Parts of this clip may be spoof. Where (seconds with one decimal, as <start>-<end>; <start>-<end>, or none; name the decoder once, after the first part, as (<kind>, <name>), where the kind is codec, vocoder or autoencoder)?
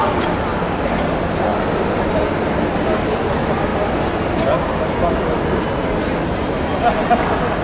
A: 1.5-2.1 (vocoder, BigVGAN v2)